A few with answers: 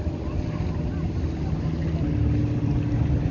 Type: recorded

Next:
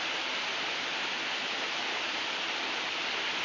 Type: recorded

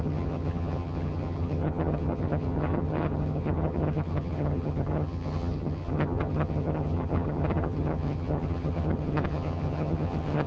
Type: remade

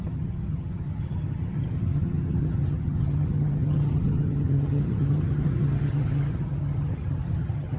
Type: remade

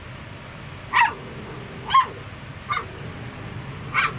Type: recorded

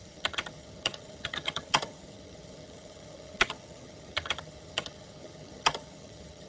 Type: remade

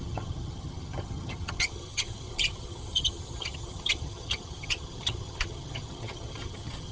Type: remade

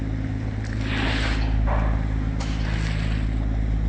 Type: recorded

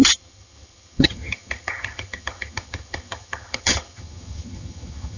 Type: remade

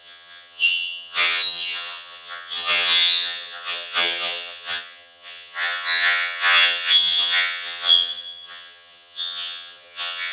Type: remade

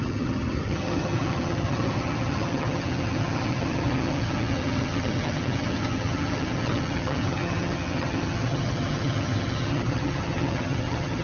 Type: remade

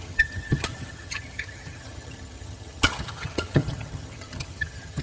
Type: remade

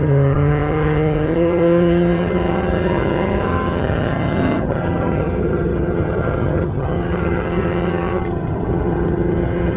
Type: remade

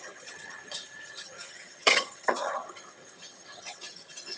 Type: remade